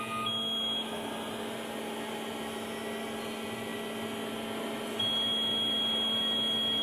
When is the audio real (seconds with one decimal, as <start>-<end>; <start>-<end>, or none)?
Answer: 0.0-6.8